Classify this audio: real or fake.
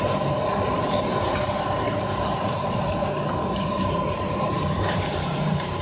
fake